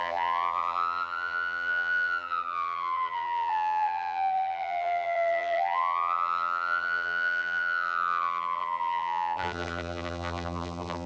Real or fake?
fake